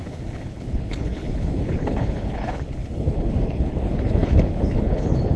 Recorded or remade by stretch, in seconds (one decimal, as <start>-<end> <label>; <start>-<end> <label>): 0.0-5.4 remade

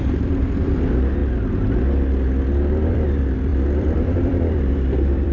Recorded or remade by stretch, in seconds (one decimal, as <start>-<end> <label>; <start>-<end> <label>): 0.0-1.2 remade; 1.2-2.9 recorded; 2.9-5.3 remade